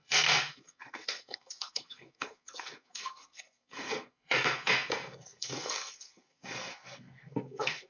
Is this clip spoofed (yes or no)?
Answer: yes